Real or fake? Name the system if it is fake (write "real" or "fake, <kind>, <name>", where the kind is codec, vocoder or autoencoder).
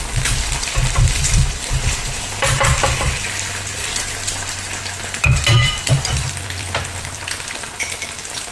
fake, vocoder, BigVGAN v2